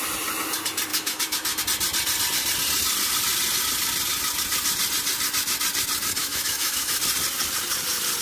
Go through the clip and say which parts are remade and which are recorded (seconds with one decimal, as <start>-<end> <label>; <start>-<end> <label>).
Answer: 0.0-0.9 recorded; 0.9-1.6 remade; 1.6-6.2 recorded; 6.2-7.0 remade; 7.0-8.2 recorded